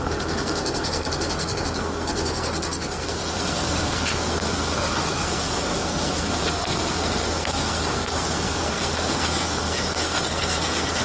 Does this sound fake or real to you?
fake